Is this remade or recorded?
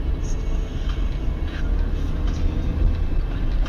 recorded